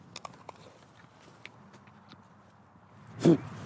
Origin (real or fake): real